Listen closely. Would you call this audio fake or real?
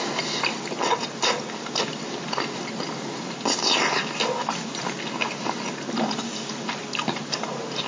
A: real